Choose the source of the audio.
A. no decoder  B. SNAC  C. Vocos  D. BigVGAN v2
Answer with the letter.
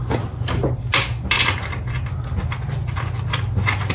A